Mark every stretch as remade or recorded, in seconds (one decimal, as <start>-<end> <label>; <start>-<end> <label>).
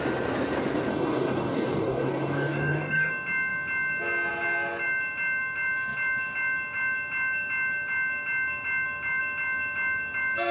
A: 0.0-0.9 recorded; 0.9-3.1 remade; 3.1-10.5 recorded